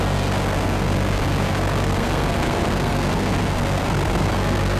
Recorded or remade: remade